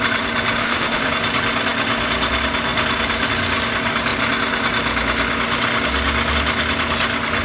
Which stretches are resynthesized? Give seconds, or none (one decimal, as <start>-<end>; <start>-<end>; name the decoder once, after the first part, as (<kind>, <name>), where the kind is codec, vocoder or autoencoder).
0.6-1.1 (autoencoder, DAC-VAE)